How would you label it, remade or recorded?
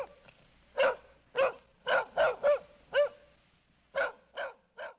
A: recorded